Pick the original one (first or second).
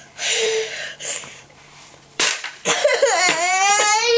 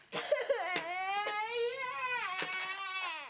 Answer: second